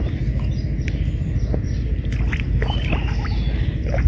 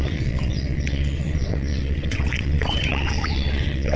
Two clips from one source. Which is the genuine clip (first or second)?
first